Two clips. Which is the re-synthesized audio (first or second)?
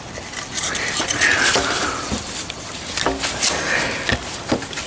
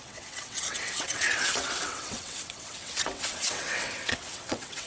second